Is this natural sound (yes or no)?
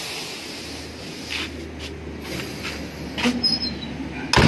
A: yes